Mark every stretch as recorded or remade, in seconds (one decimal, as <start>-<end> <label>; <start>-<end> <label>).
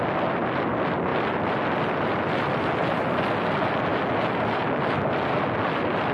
0.0-6.1 recorded